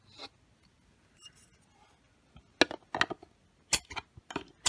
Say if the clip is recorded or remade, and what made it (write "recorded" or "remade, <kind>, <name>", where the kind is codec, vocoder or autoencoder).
recorded